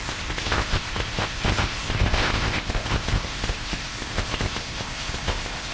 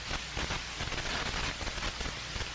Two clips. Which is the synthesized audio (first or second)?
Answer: first